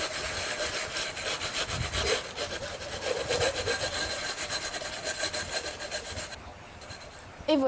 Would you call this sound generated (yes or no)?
no